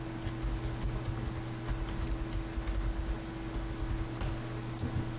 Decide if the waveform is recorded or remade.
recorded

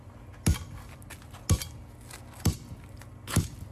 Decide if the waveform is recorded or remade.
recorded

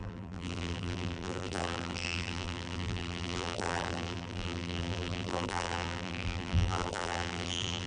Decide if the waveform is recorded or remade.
remade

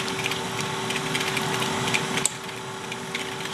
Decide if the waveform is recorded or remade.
recorded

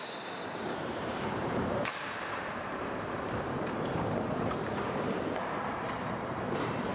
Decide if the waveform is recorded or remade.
remade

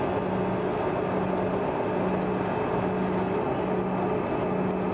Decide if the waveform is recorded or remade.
recorded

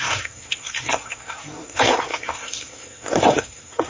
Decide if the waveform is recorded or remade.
remade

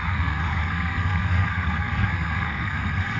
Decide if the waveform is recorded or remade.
remade